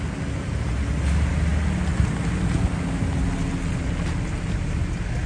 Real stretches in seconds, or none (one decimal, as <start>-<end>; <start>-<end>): 0.0-5.3